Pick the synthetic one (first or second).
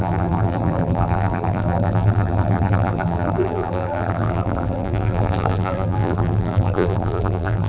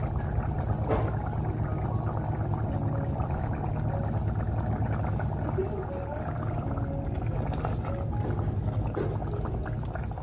first